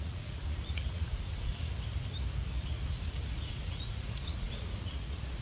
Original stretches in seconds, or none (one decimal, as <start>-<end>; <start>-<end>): 1.7-2.6